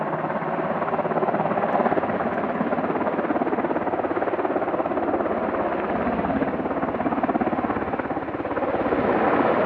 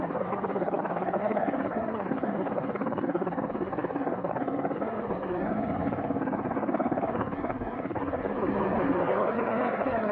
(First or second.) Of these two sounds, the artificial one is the second